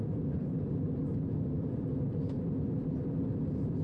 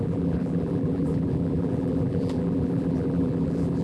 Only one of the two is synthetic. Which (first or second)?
second